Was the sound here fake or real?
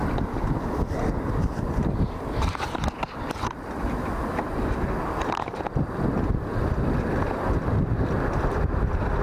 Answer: real